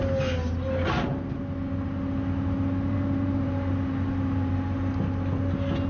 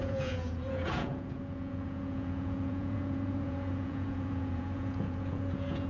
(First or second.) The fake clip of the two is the second